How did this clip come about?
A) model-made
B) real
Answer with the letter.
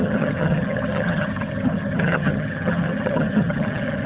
A